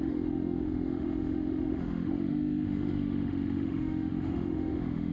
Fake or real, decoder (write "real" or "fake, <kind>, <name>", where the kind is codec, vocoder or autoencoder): fake, autoencoder, DAC-VAE